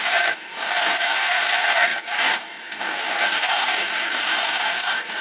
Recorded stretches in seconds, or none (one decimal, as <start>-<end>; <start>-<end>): none